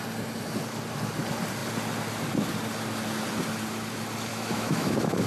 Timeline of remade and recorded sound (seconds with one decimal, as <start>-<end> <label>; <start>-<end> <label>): 0.0-4.3 recorded; 4.3-5.3 remade